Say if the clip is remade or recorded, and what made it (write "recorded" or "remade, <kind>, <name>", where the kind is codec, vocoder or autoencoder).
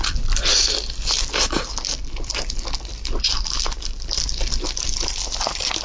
recorded